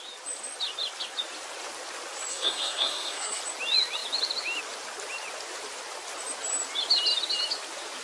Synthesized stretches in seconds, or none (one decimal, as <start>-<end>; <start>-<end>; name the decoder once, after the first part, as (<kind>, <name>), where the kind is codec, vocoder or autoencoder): 2.3-3.4 (codec, SNAC)